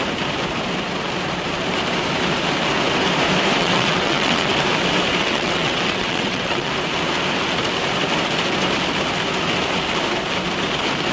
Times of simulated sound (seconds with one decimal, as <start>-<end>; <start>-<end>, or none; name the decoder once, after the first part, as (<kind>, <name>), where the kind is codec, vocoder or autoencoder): 3.6-4.5 (vocoder, WaveNeXt); 5.2-6.7